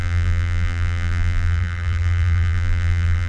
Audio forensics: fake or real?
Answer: fake